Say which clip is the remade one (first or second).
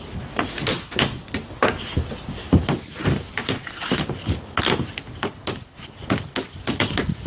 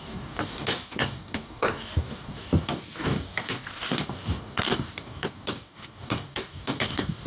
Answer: second